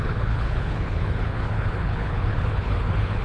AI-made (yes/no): yes